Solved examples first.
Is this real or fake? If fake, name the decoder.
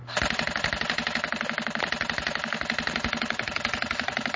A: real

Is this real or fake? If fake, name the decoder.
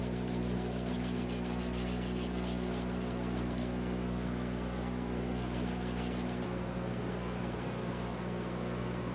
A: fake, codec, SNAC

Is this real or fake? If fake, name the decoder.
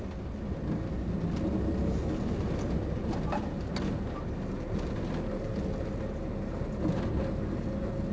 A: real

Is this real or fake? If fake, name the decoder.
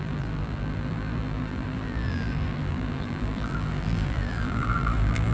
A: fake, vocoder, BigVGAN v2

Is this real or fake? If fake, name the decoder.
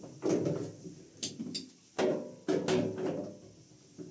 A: real